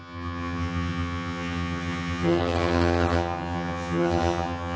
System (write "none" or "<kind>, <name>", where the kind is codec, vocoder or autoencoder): vocoder, HiFi-GAN